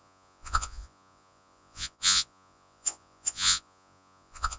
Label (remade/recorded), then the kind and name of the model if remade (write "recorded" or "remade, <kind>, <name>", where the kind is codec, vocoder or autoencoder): remade, vocoder, Vocos